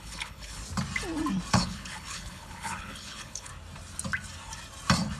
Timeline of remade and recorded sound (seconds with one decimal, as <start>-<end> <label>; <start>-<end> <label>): 0.0-0.6 remade; 0.6-1.5 recorded; 1.5-3.5 remade; 3.5-5.2 recorded